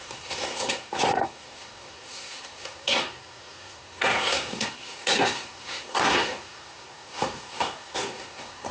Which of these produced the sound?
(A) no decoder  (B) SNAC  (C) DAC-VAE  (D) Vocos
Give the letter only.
B